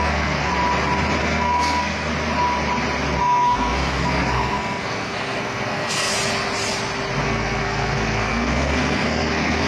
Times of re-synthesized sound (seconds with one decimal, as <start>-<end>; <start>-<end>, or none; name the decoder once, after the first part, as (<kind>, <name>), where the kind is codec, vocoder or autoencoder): 0.0-0.5 (codec, SNAC); 1.2-2.1; 3.2-6.1; 7.2-9.7